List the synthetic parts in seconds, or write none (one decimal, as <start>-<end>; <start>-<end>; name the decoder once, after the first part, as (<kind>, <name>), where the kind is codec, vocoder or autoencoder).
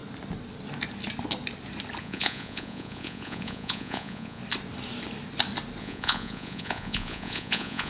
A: 2.0-4.4 (vocoder, Vocos); 5.8-7.9